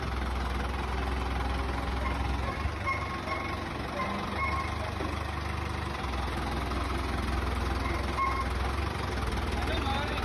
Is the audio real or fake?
real